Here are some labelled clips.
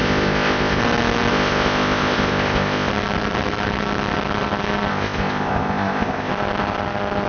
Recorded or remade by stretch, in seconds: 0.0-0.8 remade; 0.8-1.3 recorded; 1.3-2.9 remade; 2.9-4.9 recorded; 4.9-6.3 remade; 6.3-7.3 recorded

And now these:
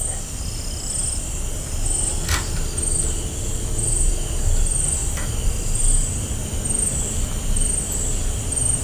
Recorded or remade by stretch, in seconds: 0.0-3.5 recorded; 3.5-4.1 remade; 4.1-5.0 recorded; 5.0-5.9 remade; 5.9-6.4 recorded; 6.4-8.0 remade; 8.0-8.8 recorded

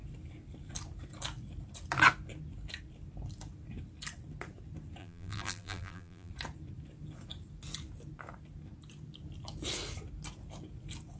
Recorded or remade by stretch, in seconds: 0.0-5.0 recorded; 5.0-6.3 remade; 6.3-11.2 recorded

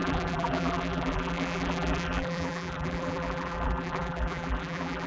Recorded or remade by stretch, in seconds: 0.0-5.1 remade

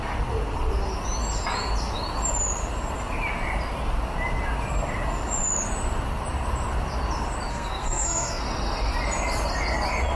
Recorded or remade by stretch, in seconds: 0.0-7.5 recorded; 7.5-8.4 remade; 8.4-10.2 recorded